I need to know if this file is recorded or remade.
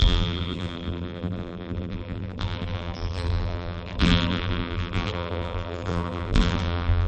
remade